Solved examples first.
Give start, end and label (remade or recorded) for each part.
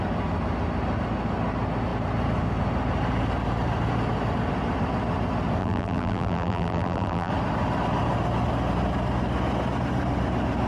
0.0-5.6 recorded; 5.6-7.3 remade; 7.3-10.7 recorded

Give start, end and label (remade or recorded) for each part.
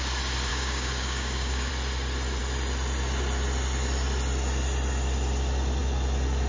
0.0-0.5 recorded; 0.5-1.7 remade; 1.7-6.5 recorded